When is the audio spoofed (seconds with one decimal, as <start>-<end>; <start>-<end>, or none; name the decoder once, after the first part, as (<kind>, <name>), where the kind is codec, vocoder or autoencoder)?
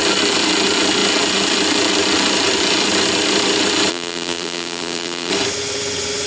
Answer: 3.9-5.3 (vocoder, BigVGAN v2)